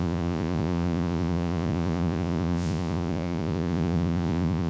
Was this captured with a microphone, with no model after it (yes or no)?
no